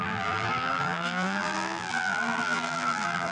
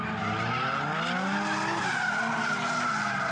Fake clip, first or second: first